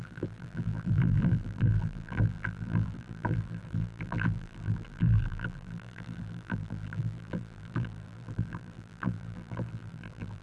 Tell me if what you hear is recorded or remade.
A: remade